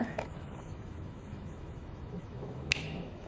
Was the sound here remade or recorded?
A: remade